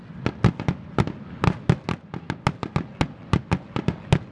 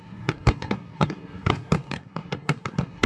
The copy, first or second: second